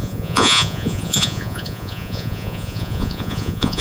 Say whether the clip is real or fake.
fake